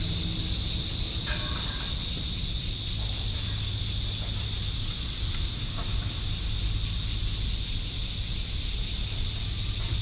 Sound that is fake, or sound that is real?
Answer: real